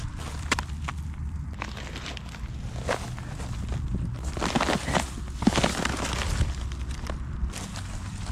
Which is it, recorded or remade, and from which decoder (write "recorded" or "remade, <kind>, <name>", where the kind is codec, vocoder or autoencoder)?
recorded